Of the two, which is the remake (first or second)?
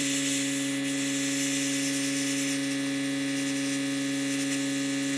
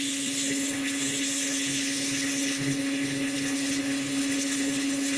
second